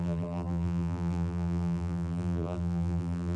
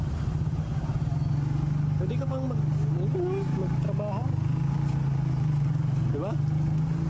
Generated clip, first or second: first